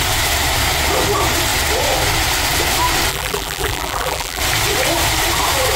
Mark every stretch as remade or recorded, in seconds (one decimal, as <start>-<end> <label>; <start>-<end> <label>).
0.0-3.1 recorded; 3.1-4.4 remade; 4.4-5.8 recorded